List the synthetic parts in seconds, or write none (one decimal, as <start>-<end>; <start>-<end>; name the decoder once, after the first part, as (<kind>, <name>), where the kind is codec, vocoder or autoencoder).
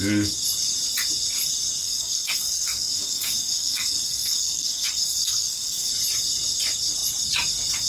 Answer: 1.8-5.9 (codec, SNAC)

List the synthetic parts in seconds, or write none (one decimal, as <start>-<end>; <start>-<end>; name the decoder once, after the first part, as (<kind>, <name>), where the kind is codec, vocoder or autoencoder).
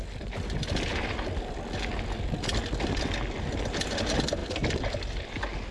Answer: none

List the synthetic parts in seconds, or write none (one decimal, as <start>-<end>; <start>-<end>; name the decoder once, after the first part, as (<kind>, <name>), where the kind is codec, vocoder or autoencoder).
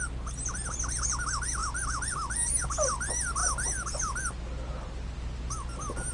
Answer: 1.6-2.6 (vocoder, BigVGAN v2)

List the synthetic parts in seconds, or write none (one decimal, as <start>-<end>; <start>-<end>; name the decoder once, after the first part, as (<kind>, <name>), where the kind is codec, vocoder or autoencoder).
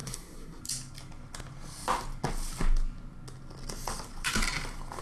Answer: 0.0-0.6 (codec, SNAC)